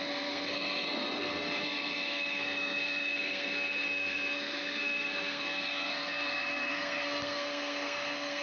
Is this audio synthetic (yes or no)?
yes